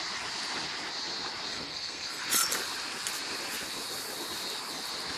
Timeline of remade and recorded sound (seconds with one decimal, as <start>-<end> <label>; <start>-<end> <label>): 0.0-1.5 recorded; 1.5-2.2 remade; 2.2-5.2 recorded